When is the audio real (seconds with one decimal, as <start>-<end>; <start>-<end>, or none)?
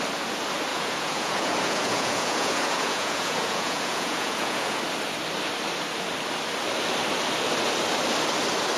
0.0-0.7; 4.8-8.8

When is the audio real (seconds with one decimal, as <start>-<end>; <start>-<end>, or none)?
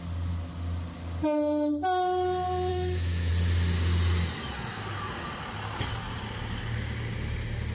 0.0-2.7; 3.3-7.7